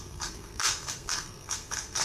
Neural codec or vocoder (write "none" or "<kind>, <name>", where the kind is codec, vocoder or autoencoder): codec, SNAC